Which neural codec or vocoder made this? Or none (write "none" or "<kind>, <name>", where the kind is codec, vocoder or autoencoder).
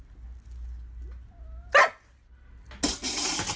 none